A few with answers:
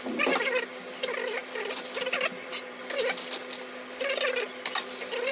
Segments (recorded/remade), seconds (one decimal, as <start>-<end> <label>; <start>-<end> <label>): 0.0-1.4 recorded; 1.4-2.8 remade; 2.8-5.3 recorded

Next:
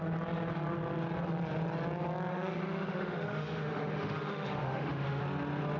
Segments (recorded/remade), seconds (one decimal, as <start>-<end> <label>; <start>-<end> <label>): 0.0-2.3 recorded; 2.3-5.2 remade; 5.2-5.8 recorded

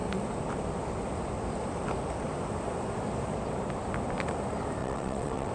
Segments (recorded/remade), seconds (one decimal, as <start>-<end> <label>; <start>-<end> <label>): 0.0-4.8 recorded; 4.8-5.5 remade